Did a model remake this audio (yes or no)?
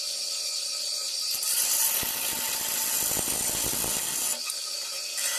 no